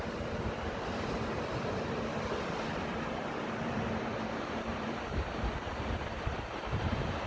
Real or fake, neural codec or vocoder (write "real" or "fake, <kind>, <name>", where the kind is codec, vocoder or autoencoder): fake, vocoder, BigVGAN v2